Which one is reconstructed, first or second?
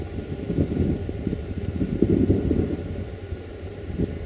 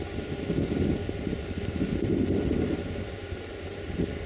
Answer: first